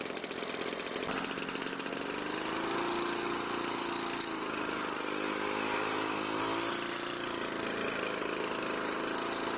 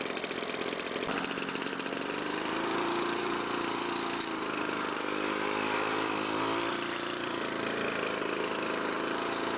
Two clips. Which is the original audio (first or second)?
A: first